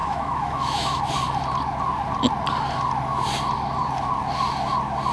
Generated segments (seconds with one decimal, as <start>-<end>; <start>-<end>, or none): 0.0-1.0